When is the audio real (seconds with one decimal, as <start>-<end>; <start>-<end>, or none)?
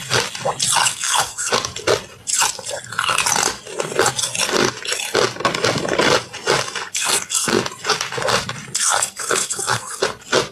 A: 0.0-0.8; 1.5-6.9; 7.5-8.8; 10.0-10.5